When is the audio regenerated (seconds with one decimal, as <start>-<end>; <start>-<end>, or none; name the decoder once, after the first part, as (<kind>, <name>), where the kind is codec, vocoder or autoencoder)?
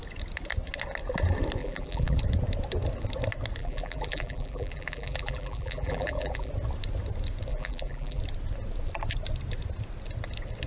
1.6-2.2 (vocoder, BigVGAN v2); 3.6-6.5; 7.5-8.2